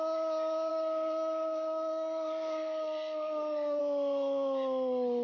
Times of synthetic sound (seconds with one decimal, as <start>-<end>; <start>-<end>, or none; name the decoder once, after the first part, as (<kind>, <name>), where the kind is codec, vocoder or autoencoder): 0.7-3.8 (codec, SNAC)

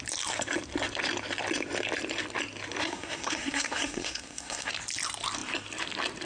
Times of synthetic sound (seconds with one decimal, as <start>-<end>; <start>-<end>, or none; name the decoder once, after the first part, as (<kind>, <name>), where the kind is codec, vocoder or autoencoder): 2.8-4.7 (codec, SNAC)

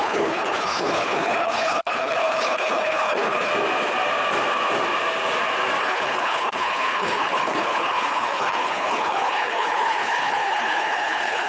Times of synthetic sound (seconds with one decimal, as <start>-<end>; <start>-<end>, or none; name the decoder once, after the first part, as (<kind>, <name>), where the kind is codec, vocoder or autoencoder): 0.0-3.5 (codec, HILCodec); 5.8-11.5

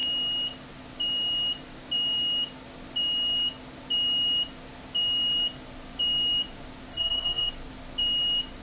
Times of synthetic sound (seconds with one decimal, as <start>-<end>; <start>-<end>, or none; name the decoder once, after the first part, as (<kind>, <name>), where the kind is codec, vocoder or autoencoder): 6.9-7.5 (codec, SNAC)

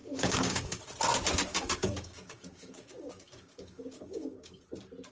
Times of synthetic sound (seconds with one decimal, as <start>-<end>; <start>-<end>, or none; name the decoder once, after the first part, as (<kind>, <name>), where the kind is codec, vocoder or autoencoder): 0.0-0.8 (codec, DAC); 1.5-4.6

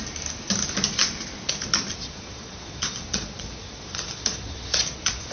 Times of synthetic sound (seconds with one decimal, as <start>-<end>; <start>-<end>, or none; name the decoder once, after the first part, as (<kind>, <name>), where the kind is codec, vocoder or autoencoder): 1.9-5.3 (vocoder, Vocos)

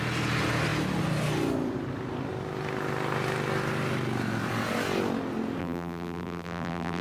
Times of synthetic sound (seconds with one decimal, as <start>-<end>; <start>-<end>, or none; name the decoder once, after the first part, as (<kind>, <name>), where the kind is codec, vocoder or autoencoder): 5.6-7.0 (vocoder, BigVGAN v2)

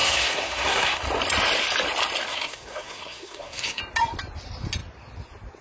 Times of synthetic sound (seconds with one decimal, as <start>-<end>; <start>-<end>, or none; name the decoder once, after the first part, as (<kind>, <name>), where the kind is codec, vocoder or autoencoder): 0.0-1.0 (codec, SNAC); 2.3-3.8